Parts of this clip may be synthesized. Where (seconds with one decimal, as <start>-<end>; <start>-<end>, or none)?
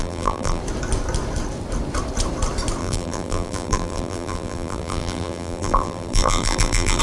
0.0-0.6; 2.8-7.0